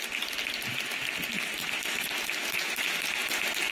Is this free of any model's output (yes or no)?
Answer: yes